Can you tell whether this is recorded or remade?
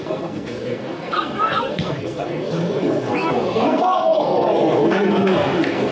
remade